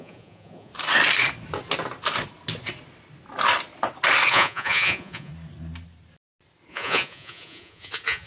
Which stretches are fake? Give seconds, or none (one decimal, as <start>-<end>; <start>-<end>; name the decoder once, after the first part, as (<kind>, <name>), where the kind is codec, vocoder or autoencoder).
0.0-0.7 (vocoder, Vocos); 4.3-5.3; 6.7-8.3